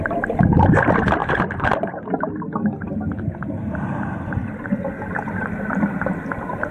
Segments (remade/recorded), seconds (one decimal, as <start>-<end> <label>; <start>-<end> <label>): 0.0-6.7 recorded